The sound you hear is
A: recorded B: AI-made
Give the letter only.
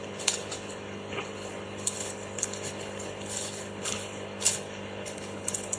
B